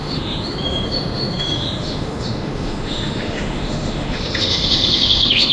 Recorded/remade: remade